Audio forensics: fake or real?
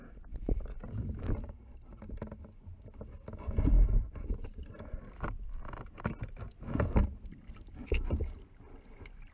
real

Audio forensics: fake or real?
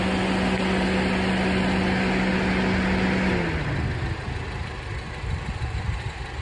real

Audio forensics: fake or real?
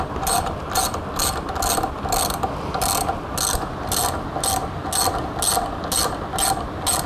real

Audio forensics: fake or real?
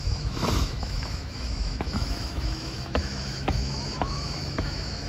fake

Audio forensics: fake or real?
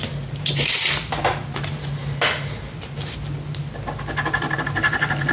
real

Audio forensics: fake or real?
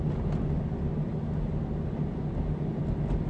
real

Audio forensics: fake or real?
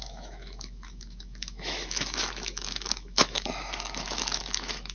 fake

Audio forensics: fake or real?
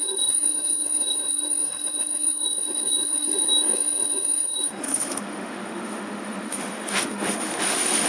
fake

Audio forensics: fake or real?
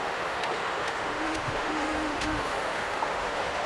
fake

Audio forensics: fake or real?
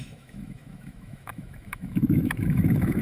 fake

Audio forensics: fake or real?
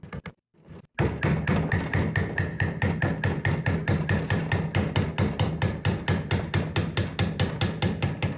real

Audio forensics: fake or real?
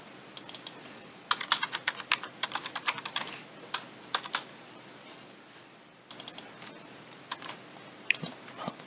real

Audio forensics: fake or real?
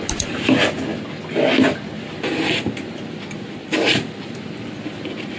real